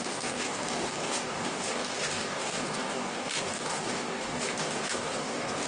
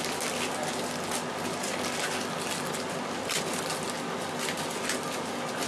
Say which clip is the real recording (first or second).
second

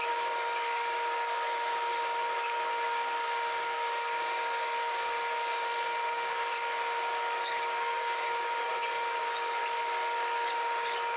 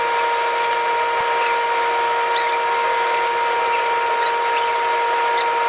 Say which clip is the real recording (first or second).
second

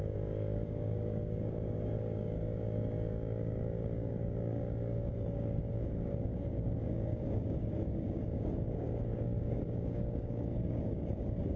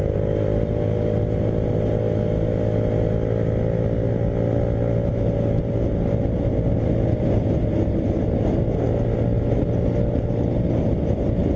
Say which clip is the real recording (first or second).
second